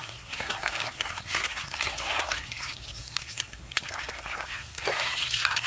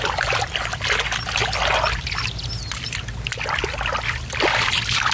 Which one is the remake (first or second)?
first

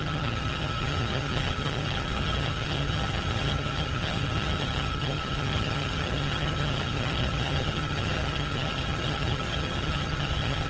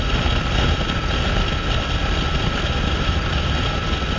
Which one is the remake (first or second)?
first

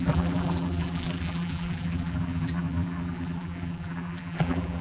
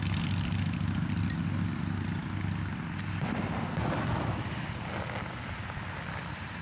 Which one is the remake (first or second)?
first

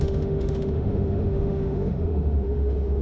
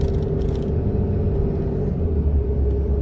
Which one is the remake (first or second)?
first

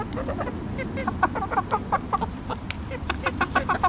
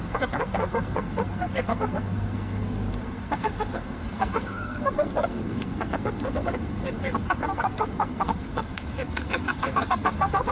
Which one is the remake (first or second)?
second